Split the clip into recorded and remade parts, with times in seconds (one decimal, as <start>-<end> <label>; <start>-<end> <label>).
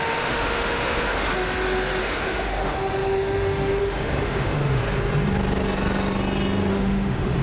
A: 0.0-1.3 remade; 1.3-2.0 recorded; 2.0-4.8 remade; 4.8-6.7 recorded; 6.7-7.4 remade